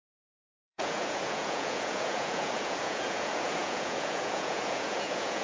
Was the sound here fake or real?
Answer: fake